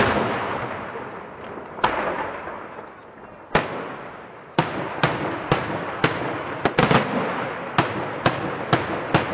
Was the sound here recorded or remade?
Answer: recorded